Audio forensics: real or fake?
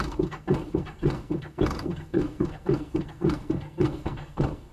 fake